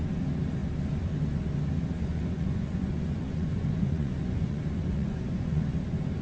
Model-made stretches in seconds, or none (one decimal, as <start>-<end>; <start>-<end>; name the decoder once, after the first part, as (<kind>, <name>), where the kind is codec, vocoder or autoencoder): 2.1-5.8 (vocoder, Vocos)